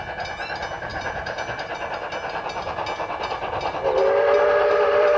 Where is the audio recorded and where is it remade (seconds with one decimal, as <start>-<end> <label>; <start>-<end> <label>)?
0.0-5.2 recorded